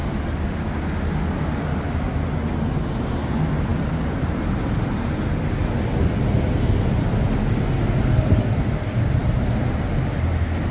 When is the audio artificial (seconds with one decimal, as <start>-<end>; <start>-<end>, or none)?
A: none